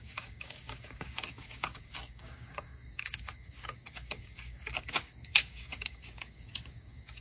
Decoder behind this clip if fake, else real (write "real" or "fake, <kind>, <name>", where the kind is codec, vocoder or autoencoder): fake, codec, DAC